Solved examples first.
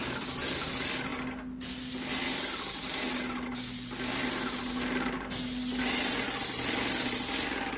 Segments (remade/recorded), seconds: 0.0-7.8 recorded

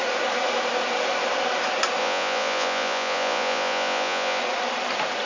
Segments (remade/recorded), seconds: 0.0-2.0 recorded; 2.0-4.4 remade; 4.4-5.3 recorded

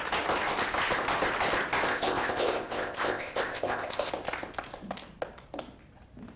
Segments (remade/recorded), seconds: 0.0-1.9 recorded; 1.9-4.1 remade; 4.1-6.4 recorded